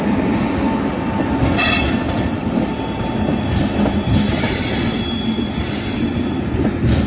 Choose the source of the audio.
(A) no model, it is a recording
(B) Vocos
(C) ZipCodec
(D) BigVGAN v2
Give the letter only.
A